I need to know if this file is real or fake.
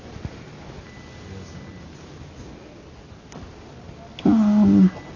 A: real